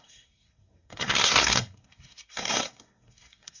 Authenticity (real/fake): fake